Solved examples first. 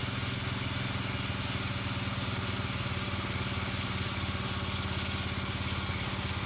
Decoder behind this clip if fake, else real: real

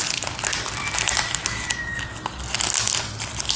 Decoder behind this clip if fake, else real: real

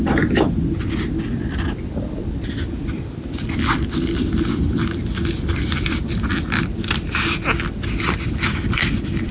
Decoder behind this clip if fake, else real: real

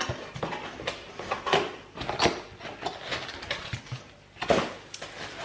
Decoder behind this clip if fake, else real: real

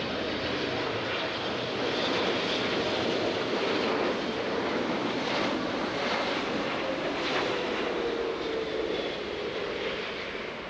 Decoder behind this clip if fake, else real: real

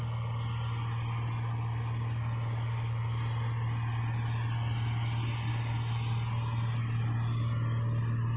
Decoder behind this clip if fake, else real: real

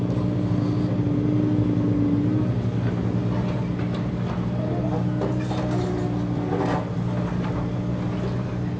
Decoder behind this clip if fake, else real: real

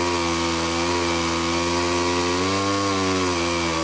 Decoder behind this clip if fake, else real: real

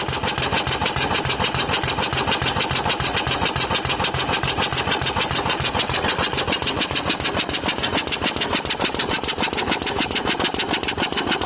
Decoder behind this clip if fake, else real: real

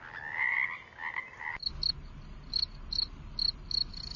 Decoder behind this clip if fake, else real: real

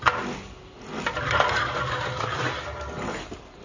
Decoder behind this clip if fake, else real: real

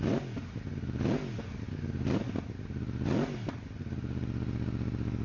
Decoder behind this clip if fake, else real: real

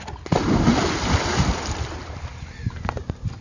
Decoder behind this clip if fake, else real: real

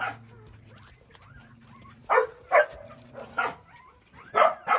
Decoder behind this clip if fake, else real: real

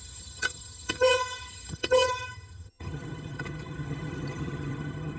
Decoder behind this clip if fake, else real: fake, vocoder, HiFi-GAN